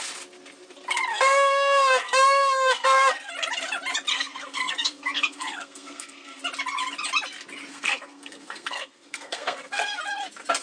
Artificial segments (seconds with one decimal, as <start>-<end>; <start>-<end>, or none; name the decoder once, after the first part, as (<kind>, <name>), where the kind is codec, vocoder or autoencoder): 1.1-3.3 (codec, SNAC); 4.1-6.4; 7.7-10.0